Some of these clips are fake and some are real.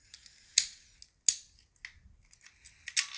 real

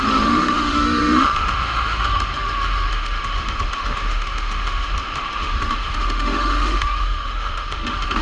fake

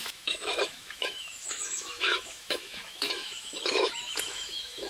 fake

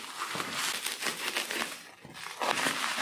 real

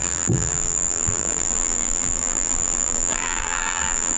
fake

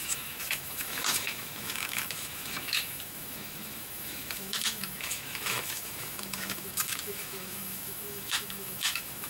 fake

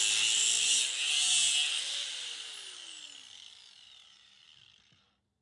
real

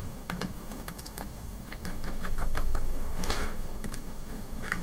fake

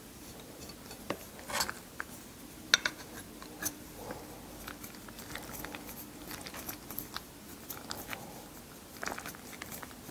real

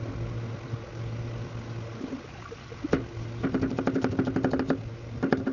real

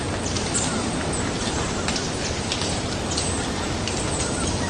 real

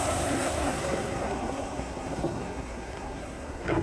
fake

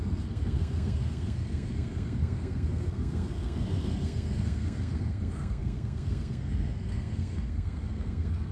fake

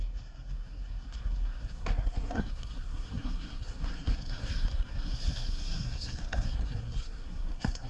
fake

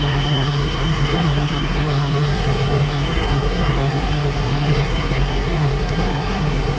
fake